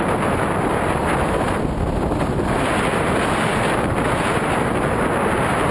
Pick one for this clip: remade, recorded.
recorded